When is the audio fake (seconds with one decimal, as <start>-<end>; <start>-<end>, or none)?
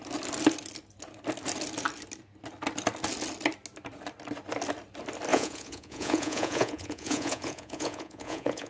5.3-8.7